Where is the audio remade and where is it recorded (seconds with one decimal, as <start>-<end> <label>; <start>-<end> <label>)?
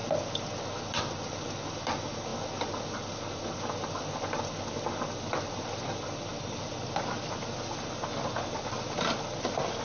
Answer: 0.0-9.8 recorded